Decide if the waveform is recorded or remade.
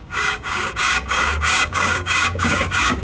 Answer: remade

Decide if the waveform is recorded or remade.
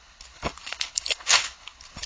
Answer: remade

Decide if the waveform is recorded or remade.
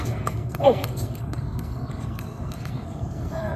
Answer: remade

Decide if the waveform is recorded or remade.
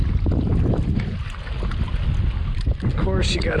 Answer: recorded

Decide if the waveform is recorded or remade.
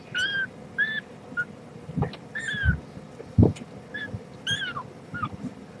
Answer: recorded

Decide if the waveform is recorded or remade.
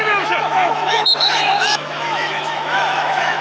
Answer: remade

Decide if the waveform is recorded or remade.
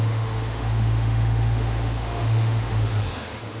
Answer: remade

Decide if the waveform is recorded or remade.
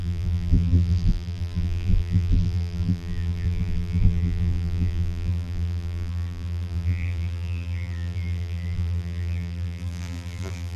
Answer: remade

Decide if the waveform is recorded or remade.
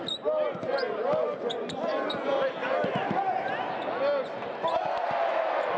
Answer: recorded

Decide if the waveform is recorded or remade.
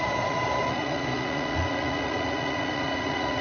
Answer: remade